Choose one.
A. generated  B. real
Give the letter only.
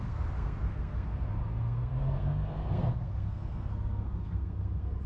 A